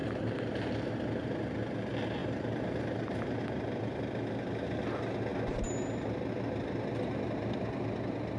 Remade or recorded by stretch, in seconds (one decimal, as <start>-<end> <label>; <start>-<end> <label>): 0.0-0.9 remade; 0.9-2.2 recorded; 2.2-3.4 remade; 3.4-8.4 recorded